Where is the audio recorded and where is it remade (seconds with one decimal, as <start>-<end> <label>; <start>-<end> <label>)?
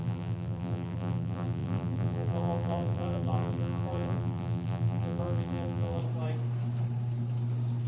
0.0-6.0 remade; 6.0-7.9 recorded